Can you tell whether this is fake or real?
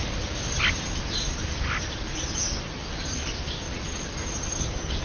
real